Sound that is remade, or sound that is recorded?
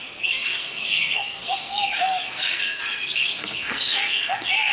remade